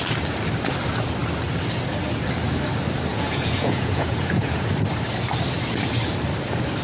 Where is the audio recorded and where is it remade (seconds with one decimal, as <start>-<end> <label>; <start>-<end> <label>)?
0.0-3.1 recorded; 3.1-4.7 remade; 4.7-6.8 recorded